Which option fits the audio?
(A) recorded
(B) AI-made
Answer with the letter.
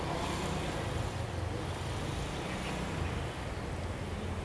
A